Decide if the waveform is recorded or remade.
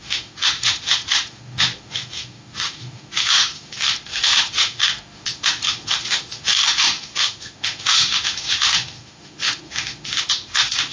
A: remade